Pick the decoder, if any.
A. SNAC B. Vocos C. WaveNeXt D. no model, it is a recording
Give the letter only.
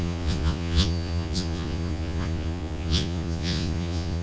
B